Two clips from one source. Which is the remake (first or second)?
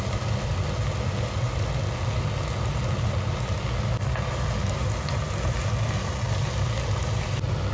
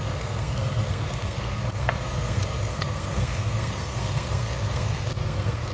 second